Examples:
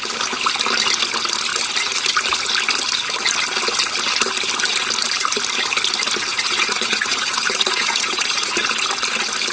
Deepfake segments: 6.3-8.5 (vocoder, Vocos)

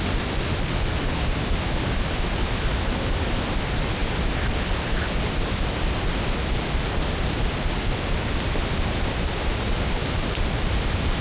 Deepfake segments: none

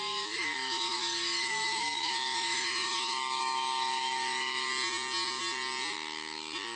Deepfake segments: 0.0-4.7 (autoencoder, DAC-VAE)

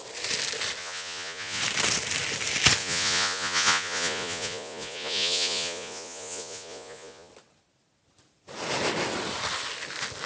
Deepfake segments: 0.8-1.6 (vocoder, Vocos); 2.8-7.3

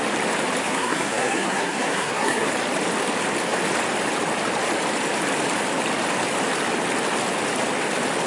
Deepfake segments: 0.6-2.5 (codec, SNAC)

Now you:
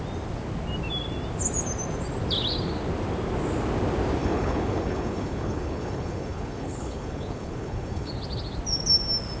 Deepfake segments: 4.2-8.1 (codec, HILCodec)